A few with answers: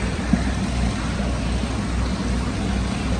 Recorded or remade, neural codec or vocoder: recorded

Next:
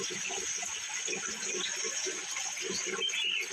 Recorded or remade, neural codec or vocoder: recorded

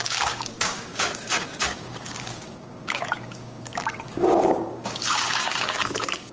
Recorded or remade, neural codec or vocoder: remade, codec, DAC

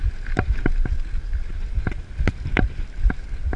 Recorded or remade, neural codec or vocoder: recorded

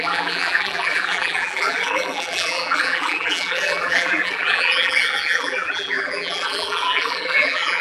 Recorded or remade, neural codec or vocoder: remade, vocoder, BigVGAN v2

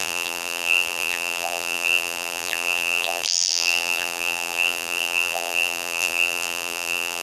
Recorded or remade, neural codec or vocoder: remade, vocoder, BigVGAN v2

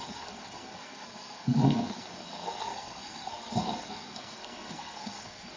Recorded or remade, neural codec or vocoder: remade, codec, SNAC